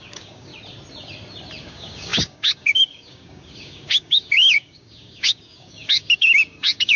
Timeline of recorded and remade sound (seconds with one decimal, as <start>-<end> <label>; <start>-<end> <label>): 0.0-0.5 remade; 0.5-1.6 recorded; 1.6-7.0 remade